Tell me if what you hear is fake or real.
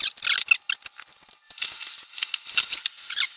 real